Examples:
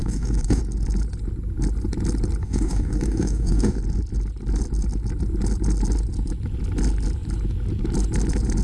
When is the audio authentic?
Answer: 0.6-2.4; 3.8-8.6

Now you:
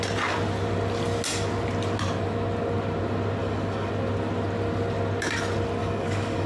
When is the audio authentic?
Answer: 0.0-3.4; 3.9-5.8

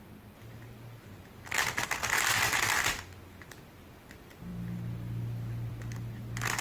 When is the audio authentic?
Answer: 0.0-6.6

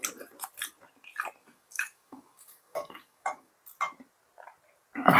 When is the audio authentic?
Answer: 0.0-1.4; 3.5-5.2

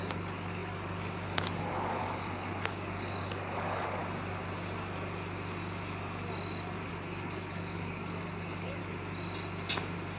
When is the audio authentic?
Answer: 4.0-6.9; 8.8-10.2